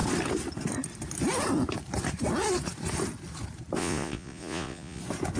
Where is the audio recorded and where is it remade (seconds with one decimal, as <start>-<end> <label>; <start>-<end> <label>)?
0.0-3.8 recorded; 3.8-5.0 remade; 5.0-5.4 recorded